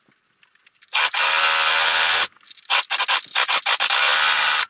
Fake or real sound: real